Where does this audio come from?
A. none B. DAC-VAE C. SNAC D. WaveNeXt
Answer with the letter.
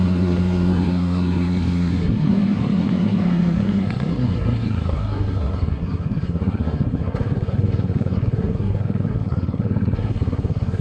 C